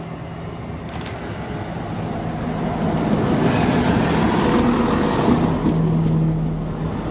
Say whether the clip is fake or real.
real